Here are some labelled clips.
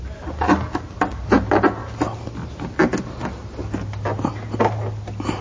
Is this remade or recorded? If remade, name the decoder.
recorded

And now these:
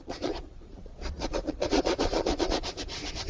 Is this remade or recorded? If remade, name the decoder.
remade, vocoder, Vocos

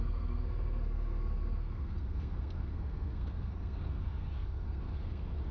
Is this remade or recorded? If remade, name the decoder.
remade, codec, SNAC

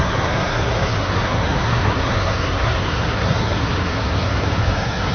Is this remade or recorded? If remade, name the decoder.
remade, codec, SNAC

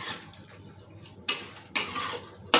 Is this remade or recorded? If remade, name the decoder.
recorded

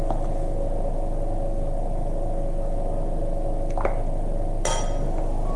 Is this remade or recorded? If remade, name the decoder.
recorded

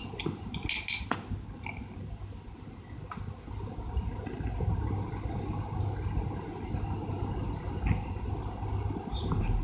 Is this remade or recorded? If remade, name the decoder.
recorded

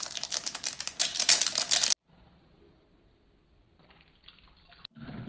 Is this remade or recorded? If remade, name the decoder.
recorded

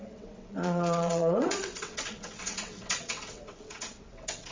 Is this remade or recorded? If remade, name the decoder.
remade, vocoder, WaveNeXt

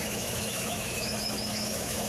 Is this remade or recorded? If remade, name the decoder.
remade, autoencoder, DAC-VAE